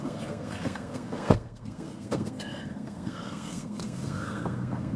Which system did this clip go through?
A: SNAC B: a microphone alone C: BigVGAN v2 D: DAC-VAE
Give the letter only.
A